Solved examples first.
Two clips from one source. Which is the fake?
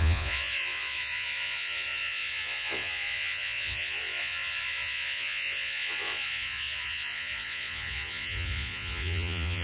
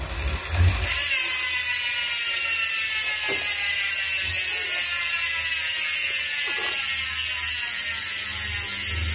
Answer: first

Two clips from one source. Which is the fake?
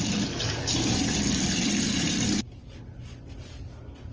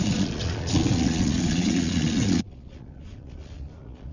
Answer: second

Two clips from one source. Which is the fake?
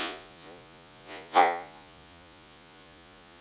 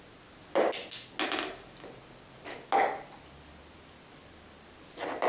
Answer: first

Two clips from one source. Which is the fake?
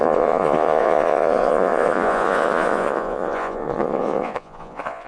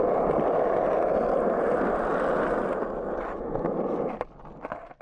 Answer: first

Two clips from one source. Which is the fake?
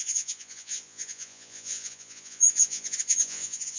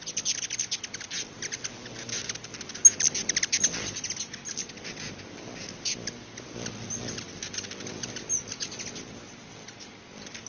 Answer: first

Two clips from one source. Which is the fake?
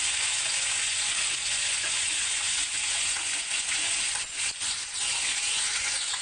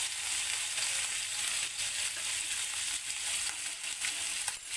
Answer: first